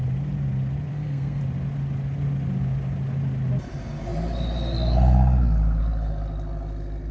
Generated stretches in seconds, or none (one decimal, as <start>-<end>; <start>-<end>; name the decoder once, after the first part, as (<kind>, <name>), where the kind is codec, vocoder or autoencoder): 0.9-1.4 (codec, SNAC)